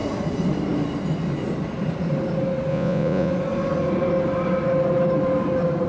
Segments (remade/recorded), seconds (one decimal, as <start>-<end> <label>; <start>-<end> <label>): 0.0-2.7 recorded; 2.7-3.3 remade; 3.3-5.9 recorded